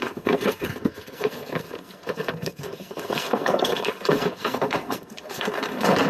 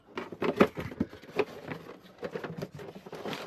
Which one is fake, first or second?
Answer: first